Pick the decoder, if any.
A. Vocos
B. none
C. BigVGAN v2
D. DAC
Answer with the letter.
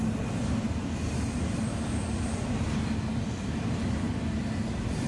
B